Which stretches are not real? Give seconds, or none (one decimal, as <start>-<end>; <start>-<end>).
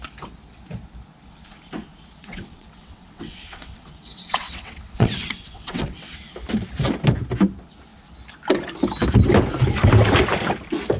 2.2-6.2